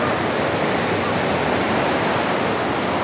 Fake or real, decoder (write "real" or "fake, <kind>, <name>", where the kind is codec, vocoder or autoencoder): real